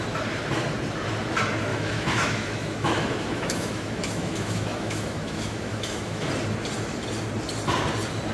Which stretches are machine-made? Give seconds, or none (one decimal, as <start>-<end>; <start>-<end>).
1.7-6.3